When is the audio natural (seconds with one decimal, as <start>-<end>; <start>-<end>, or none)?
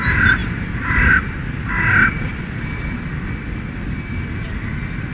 0.0-0.4; 1.1-2.3; 3.0-5.1